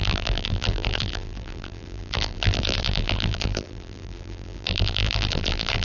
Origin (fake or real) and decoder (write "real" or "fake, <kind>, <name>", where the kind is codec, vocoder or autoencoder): fake, vocoder, BigVGAN v2